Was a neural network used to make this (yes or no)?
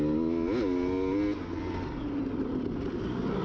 no